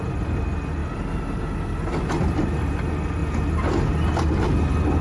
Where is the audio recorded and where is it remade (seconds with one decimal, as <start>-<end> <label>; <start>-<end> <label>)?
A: 0.0-5.0 recorded